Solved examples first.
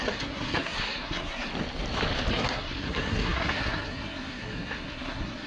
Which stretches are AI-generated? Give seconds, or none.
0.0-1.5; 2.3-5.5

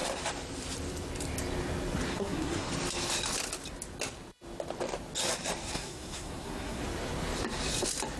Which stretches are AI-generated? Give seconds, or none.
2.1-2.7; 5.6-6.8

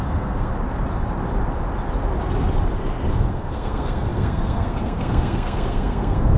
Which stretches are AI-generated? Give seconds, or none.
0.0-0.5; 3.3-6.4